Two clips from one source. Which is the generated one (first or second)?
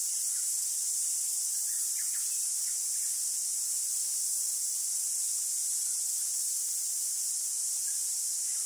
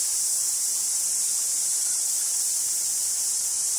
second